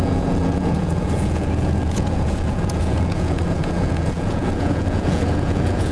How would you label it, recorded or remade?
remade